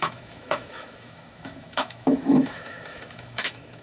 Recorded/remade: remade